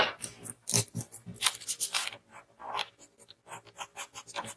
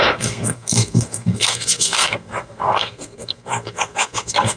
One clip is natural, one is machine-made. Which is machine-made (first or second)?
second